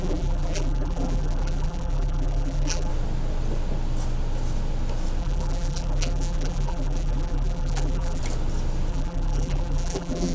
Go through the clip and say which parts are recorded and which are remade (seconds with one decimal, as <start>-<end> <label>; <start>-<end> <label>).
0.0-2.9 remade; 2.9-5.2 recorded; 5.2-8.2 remade; 8.2-8.9 recorded; 8.9-10.3 remade